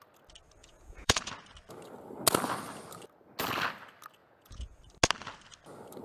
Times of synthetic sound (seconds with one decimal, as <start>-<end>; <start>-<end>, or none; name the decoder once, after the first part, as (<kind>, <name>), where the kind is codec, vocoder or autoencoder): 0.6-1.3 (vocoder, Vocos); 4.2-4.8